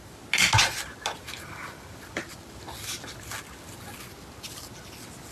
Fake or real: real